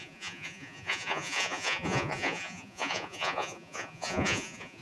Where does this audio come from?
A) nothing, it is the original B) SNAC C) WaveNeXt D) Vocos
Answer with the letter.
D